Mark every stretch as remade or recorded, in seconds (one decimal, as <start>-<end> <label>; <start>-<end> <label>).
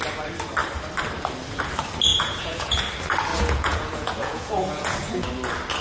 0.0-2.1 recorded; 2.1-2.8 remade; 2.8-3.3 recorded; 3.3-5.3 remade; 5.3-5.8 recorded